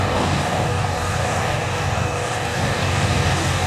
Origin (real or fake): fake